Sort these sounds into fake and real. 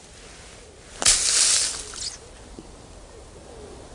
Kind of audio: real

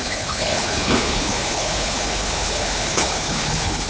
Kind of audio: fake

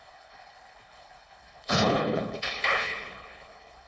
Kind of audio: fake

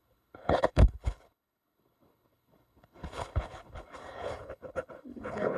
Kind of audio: fake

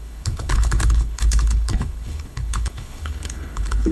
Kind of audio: fake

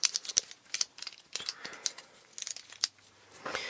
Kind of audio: real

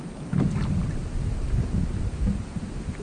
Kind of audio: real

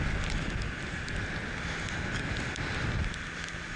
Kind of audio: real